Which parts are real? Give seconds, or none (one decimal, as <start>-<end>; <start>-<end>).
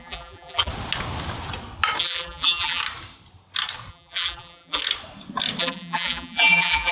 0.7-2.0; 2.8-3.9; 4.8-5.6